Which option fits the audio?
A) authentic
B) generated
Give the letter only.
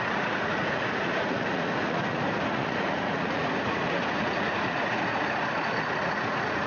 B